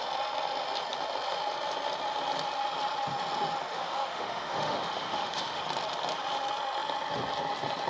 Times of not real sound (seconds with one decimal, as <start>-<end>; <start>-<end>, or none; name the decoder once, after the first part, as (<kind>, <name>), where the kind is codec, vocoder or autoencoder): 3.7-5.6 (autoencoder, DAC-VAE)